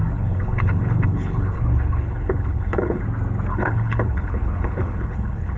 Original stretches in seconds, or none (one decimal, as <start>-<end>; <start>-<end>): 3.0-3.5